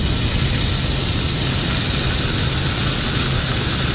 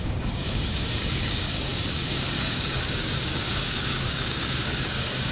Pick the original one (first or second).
first